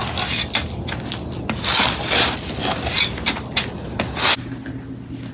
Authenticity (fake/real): real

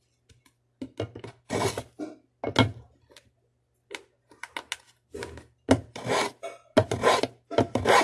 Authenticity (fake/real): real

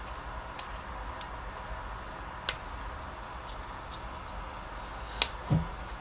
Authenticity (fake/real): real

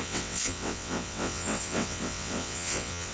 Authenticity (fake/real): fake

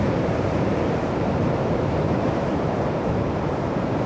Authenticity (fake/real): fake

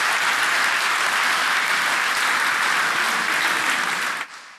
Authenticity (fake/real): real